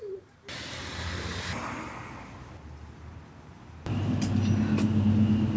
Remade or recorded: recorded